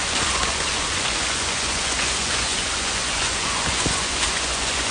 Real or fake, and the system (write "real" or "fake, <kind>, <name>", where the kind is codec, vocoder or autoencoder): fake, vocoder, Vocos